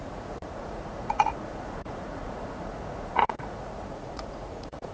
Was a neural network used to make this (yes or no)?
yes